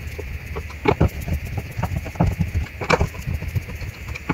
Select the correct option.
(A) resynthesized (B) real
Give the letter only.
B